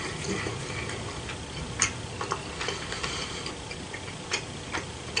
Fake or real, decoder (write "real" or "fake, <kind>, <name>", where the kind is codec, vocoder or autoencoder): real